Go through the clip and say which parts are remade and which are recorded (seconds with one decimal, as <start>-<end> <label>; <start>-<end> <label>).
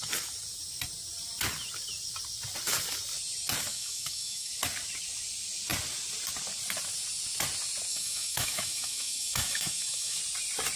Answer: 0.0-3.7 recorded; 3.7-4.5 remade; 4.5-7.9 recorded; 7.9-10.2 remade; 10.2-10.8 recorded